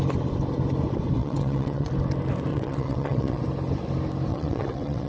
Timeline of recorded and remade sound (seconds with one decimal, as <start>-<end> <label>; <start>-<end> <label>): 0.0-1.2 recorded; 1.2-1.9 remade; 1.9-2.5 recorded; 2.5-3.4 remade; 3.4-4.3 recorded; 4.3-5.1 remade